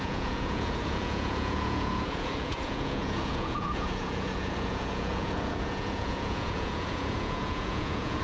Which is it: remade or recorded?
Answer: remade